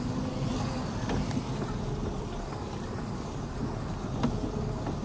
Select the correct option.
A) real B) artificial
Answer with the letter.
A